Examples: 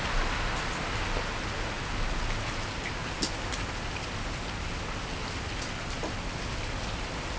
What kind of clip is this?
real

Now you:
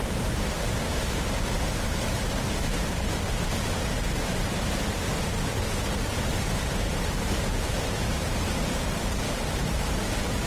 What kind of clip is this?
fake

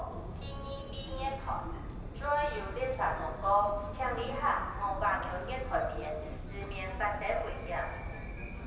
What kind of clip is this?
real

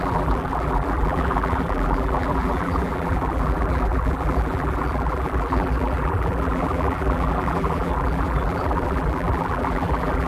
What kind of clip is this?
fake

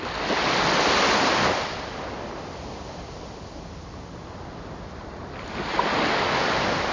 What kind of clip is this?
real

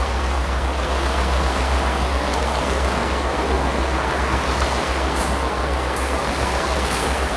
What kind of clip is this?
fake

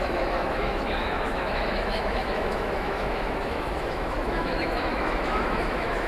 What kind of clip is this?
fake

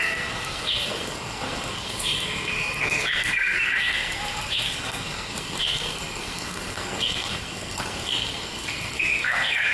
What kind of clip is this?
fake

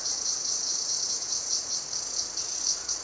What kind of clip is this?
fake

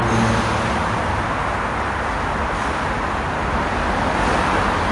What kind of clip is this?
real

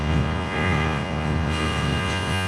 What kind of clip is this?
fake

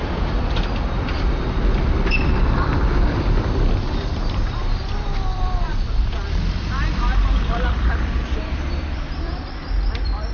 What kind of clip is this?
fake